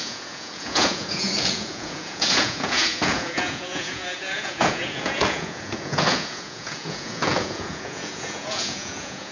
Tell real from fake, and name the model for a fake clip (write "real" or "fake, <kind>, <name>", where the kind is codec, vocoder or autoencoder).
fake, vocoder, Vocos